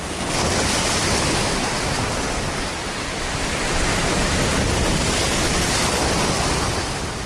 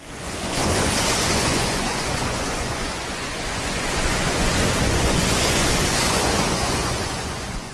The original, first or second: first